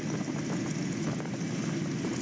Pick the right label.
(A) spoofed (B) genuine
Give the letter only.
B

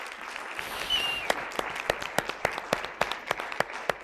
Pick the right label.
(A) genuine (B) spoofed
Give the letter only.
A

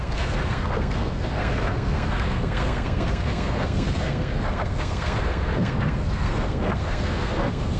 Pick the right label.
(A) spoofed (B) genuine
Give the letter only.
A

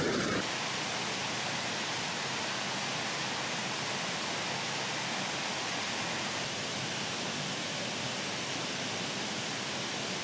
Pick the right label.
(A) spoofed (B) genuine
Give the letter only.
B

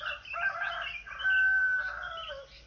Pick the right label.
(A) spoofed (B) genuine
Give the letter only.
B